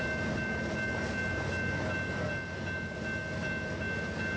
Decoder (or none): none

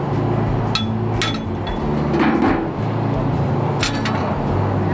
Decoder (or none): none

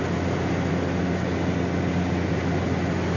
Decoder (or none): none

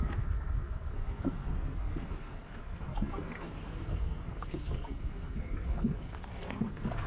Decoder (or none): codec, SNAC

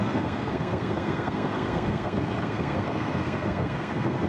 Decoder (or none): codec, SNAC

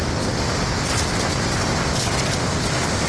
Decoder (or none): none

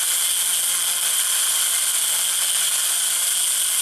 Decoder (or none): none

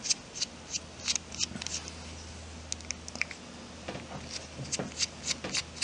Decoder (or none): none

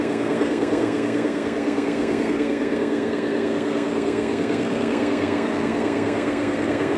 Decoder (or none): codec, SNAC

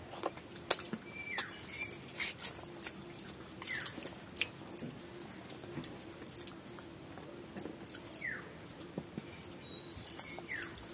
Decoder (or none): none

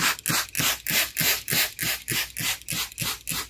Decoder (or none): none